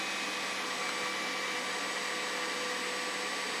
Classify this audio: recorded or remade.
recorded